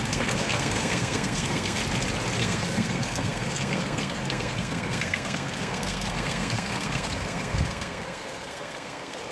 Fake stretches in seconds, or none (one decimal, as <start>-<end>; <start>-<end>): 0.0-1.8; 2.4-9.3